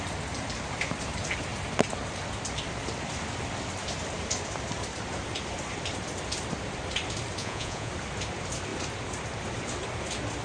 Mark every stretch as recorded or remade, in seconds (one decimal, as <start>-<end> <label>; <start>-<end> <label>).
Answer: 0.0-7.4 recorded; 7.4-7.9 remade; 7.9-10.4 recorded